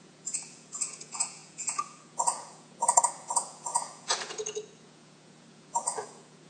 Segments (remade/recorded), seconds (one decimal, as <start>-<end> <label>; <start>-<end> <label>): 0.0-6.5 remade